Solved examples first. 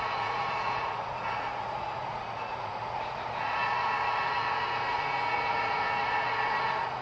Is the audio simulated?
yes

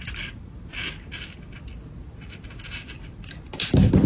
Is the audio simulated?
no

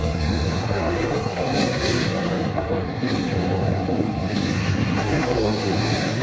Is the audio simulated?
yes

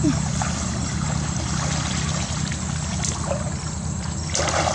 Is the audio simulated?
no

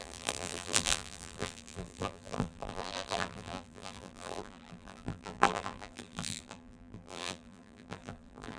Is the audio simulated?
yes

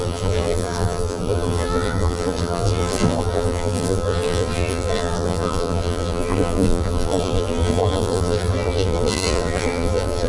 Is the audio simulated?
yes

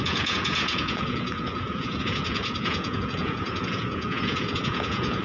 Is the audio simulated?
yes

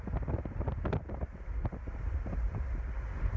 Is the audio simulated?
no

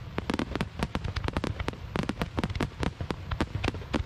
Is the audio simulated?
no